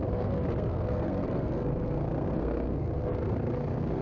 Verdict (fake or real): fake